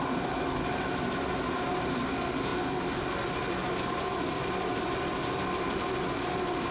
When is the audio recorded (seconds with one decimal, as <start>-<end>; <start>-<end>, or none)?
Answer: 0.0-6.7